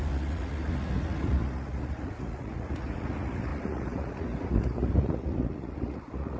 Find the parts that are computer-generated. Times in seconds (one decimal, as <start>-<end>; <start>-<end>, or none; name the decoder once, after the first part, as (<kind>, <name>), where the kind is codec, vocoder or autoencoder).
0.0-6.4 (vocoder, Vocos)